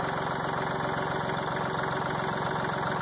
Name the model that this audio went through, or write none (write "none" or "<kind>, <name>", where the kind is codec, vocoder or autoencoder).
none